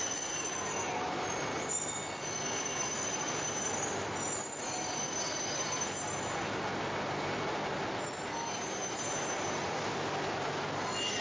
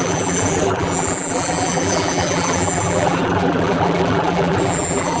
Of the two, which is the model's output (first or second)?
second